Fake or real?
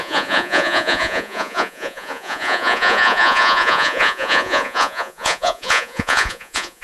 fake